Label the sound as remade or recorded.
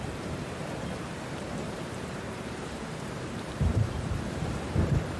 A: remade